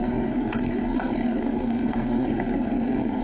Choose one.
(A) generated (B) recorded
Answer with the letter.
A